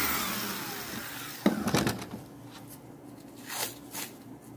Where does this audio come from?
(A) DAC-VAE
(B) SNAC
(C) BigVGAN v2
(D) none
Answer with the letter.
D